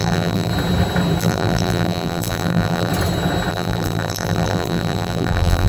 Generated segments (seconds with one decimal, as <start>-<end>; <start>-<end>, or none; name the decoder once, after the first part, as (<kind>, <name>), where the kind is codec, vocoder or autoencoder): 0.0-0.5 (vocoder, BigVGAN v2); 1.2-2.9; 3.5-5.7